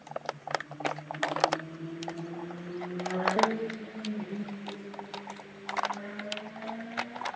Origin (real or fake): real